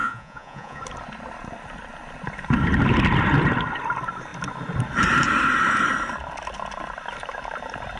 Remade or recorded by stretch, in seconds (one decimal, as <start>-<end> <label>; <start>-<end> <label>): 0.0-0.8 remade; 0.8-8.0 recorded